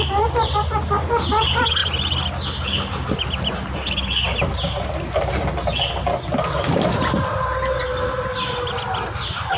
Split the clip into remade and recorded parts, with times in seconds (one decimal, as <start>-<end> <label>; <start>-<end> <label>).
0.0-9.6 recorded